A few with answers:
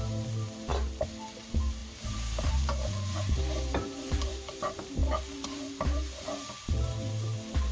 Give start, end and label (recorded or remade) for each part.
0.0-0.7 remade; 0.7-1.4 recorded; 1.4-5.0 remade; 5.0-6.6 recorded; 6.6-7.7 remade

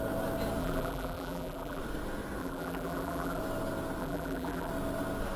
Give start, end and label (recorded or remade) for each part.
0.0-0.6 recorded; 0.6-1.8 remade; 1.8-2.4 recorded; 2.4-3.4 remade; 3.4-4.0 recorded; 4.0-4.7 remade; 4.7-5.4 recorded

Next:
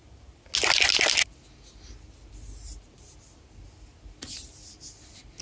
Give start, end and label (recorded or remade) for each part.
0.0-5.4 recorded

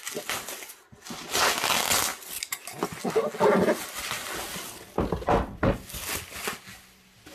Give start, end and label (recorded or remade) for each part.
0.0-7.3 recorded